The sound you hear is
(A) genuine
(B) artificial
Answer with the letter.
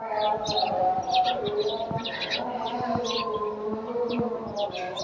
A